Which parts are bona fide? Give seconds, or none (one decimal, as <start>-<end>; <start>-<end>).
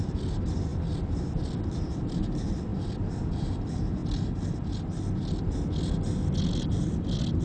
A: 4.0-6.8